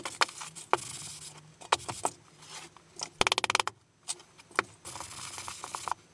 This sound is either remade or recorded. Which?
recorded